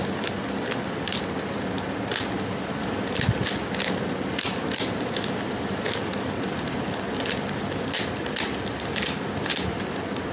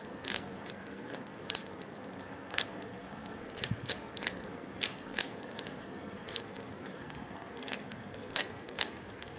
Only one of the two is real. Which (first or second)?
first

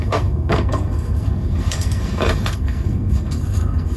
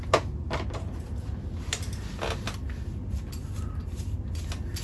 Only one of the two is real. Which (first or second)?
second